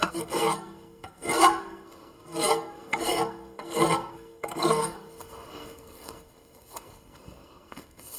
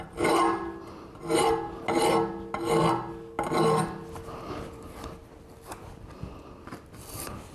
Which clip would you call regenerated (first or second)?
first